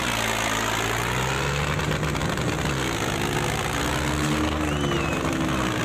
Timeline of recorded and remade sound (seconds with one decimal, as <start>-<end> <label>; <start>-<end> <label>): 0.0-2.2 recorded; 2.2-3.9 remade; 3.9-5.1 recorded; 5.1-5.8 remade